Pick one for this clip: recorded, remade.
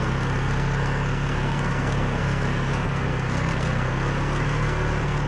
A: remade